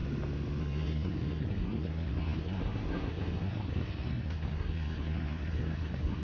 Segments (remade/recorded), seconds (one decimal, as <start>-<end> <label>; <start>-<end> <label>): 0.0-0.6 recorded; 0.6-6.2 remade